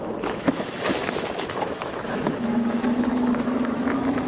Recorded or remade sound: remade